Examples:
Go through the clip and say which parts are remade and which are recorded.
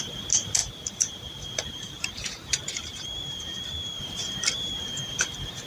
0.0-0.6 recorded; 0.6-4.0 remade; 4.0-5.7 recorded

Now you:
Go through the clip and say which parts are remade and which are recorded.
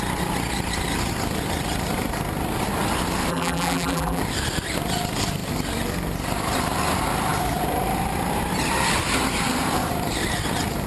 0.0-3.3 recorded; 3.3-4.2 remade; 4.2-10.9 recorded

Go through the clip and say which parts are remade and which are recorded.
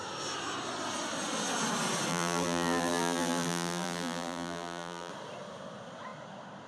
0.0-2.1 recorded; 2.1-5.1 remade; 5.1-6.7 recorded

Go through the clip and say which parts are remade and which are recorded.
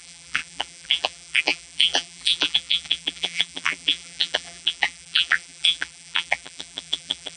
0.0-7.4 remade